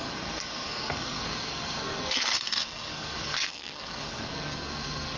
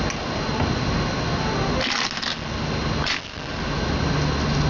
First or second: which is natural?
second